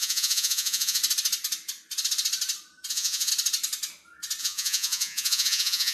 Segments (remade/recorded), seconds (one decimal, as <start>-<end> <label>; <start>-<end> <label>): 0.0-1.0 remade; 1.0-2.9 recorded; 2.9-3.3 remade; 3.3-4.4 recorded; 4.4-5.9 remade